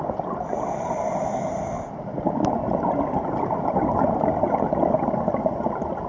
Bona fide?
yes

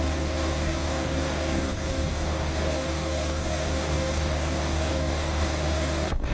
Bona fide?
no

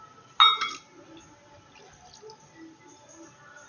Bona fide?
yes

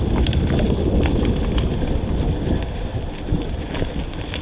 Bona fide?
yes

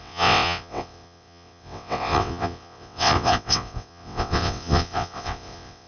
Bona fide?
no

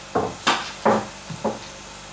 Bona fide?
yes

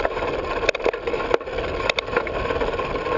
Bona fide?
yes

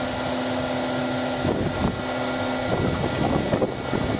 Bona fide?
yes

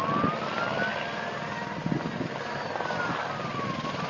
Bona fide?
yes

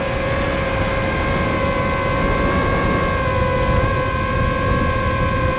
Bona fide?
yes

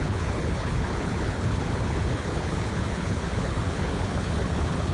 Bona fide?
no